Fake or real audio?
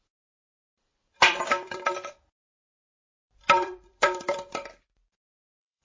fake